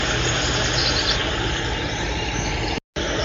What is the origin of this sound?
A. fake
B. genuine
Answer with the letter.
B